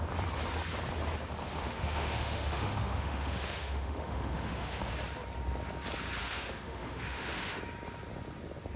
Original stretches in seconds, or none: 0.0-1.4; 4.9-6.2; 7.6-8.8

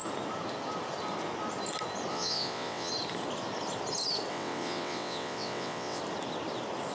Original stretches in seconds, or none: 0.0-2.1; 2.9-4.3; 6.0-6.9

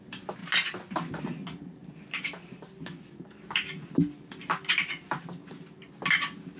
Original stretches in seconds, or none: 0.0-1.8; 4.4-6.6